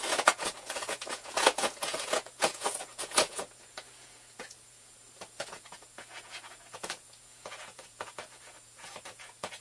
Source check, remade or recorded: remade